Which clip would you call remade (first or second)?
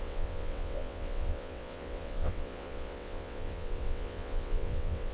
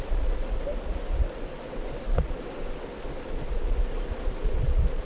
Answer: first